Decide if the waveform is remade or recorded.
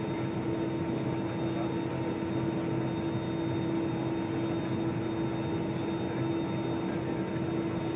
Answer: recorded